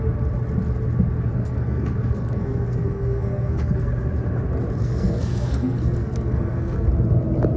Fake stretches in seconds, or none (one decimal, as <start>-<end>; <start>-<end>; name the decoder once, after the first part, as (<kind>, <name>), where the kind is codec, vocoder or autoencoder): 1.3-3.9 (codec, SNAC); 4.8-6.9